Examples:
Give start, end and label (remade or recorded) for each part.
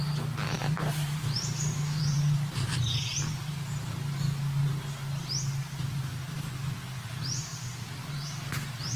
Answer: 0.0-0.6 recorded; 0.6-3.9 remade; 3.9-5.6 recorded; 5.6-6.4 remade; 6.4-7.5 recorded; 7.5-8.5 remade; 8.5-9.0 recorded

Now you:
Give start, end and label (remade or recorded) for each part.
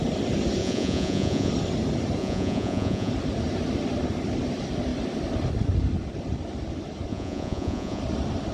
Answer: 0.0-0.6 recorded; 0.6-1.5 remade; 1.5-2.2 recorded; 2.2-3.1 remade; 3.1-7.1 recorded; 7.1-8.0 remade; 8.0-8.5 recorded